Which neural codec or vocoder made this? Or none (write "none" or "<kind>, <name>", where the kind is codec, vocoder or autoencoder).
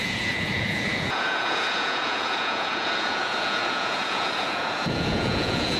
vocoder, Vocos